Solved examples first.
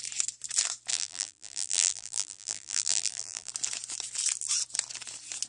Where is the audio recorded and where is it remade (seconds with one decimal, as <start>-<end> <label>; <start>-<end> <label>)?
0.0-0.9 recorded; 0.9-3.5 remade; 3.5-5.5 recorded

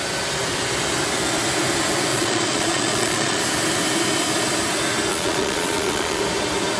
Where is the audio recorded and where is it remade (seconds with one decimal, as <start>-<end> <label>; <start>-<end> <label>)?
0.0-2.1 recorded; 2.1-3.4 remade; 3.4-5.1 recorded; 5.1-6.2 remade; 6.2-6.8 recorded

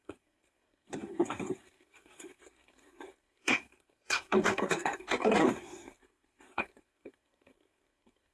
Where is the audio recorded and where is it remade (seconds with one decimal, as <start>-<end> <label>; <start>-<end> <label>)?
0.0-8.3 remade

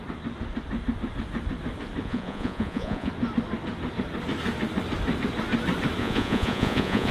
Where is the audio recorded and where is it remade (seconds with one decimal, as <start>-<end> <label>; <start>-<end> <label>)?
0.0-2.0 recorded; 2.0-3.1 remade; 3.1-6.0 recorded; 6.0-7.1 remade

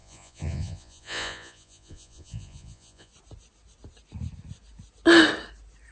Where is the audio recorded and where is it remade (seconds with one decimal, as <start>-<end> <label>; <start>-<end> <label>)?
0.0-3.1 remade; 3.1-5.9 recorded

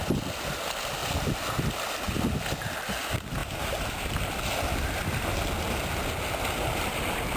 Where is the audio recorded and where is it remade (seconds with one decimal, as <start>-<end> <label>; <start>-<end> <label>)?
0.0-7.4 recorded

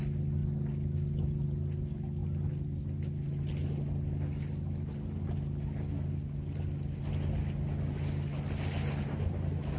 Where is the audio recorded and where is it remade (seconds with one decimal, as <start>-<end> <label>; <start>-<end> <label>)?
0.0-9.8 recorded

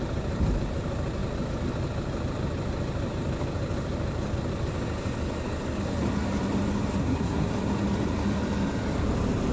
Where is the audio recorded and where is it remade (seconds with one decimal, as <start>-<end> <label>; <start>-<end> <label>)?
0.0-7.0 recorded; 7.0-7.5 remade; 7.5-9.5 recorded